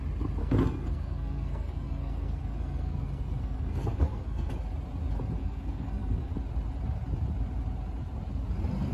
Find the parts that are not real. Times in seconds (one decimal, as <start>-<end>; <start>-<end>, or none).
0.4-4.5; 5.4-6.3